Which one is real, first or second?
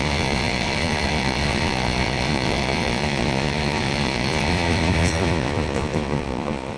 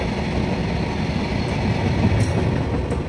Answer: second